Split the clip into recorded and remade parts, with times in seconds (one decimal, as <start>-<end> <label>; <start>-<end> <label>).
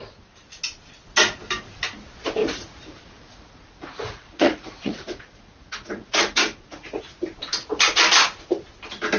0.0-2.4 recorded; 2.4-7.0 remade; 7.0-9.2 recorded